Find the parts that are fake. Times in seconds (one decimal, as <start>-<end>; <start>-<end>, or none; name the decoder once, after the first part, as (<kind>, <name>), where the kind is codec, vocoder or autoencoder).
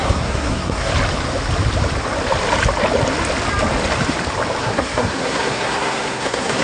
0.0-0.9 (codec, SNAC); 4.6-6.6